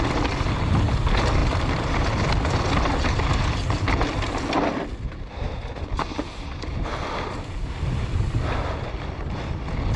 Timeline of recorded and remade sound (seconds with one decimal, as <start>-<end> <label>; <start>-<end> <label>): 0.0-10.0 recorded